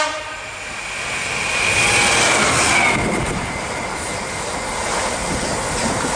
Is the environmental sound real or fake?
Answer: real